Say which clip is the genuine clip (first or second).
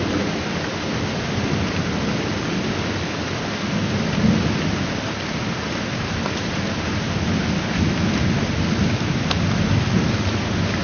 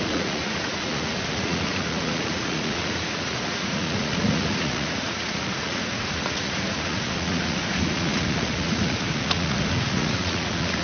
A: first